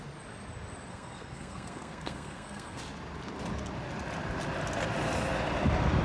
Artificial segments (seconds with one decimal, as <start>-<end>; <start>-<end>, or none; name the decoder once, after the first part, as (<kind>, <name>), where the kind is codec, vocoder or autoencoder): 0.9-2.8 (codec, SNAC)